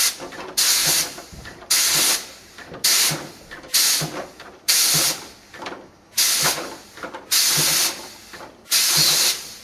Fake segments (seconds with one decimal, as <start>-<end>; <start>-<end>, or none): 0.8-1.7